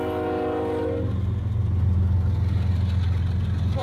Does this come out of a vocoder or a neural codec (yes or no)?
no